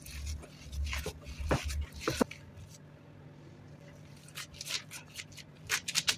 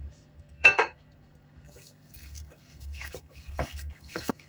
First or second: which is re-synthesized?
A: second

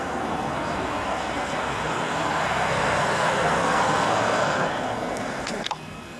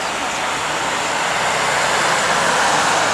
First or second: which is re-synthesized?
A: first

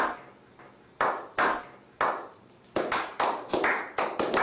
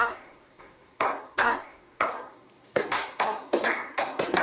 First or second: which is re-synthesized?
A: second